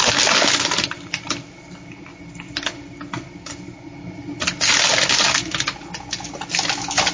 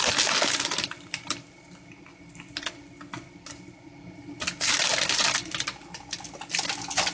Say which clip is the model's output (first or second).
second